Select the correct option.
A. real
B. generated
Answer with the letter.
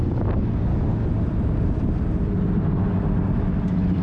A